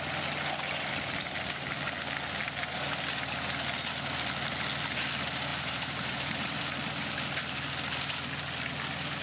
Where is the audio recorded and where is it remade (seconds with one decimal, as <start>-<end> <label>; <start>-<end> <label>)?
0.0-5.5 recorded; 5.5-6.6 remade; 6.6-9.2 recorded